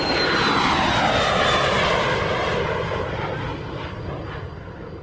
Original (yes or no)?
yes